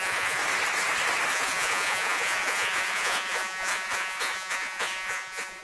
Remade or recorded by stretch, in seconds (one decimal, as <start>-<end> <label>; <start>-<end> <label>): 0.0-0.4 remade; 0.4-1.3 recorded; 1.3-5.6 remade